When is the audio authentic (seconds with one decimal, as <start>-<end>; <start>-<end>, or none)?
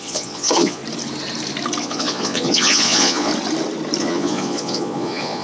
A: 0.8-1.8; 3.3-4.0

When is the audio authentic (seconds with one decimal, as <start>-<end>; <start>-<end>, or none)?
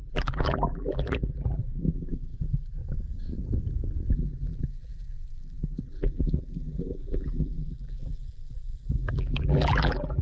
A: 2.8-4.1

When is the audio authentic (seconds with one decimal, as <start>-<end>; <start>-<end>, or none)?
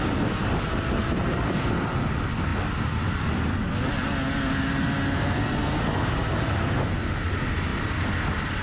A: 0.0-1.0; 2.0-2.5; 3.6-7.7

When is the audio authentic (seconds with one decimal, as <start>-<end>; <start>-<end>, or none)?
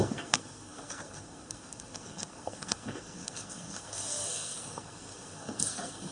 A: none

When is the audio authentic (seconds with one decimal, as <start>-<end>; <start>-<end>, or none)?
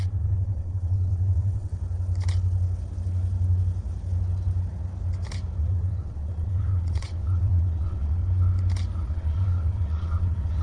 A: 1.7-5.6; 8.2-9.1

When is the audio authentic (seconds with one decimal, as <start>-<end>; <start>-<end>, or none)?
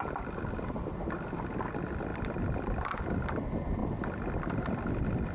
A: 0.0-5.3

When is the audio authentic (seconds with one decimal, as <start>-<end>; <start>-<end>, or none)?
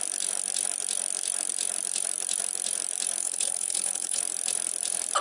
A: 0.0-3.2; 4.2-5.2